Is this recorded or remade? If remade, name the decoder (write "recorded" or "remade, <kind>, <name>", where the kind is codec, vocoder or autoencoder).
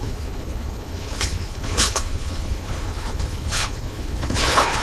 remade, codec, HILCodec